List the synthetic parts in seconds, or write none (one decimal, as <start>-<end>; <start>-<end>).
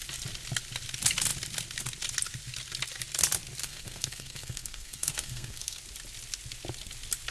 3.6-5.8